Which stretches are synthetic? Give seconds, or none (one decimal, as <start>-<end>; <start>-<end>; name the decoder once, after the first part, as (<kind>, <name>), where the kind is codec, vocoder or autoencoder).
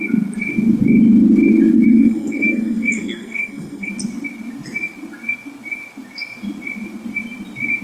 1.9-3.9 (codec, SNAC)